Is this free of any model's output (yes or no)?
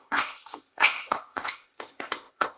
no